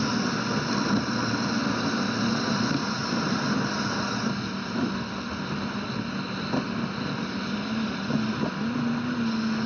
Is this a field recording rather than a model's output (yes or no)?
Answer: yes